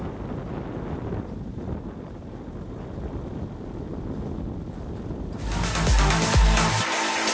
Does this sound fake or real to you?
real